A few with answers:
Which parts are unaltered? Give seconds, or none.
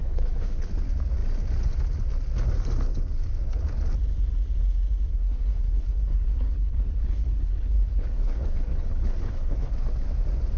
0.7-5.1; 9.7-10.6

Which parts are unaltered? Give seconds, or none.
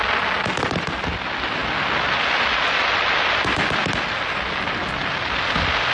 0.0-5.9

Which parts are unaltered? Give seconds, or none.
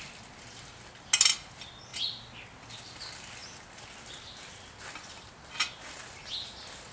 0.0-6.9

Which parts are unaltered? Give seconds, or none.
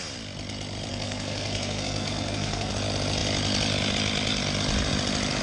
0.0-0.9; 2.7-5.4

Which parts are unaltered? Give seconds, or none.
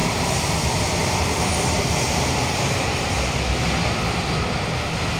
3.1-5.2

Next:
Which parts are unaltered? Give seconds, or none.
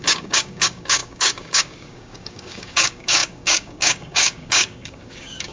none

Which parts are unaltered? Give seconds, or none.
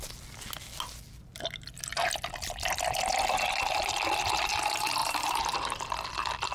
0.0-5.0; 5.9-6.5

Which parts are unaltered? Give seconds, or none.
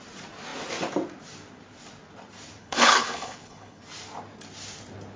0.0-2.6; 3.8-5.2